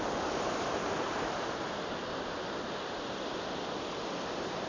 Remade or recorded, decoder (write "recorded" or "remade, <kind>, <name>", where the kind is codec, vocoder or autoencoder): recorded